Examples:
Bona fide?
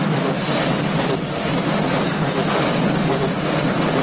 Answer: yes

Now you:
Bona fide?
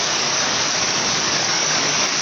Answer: no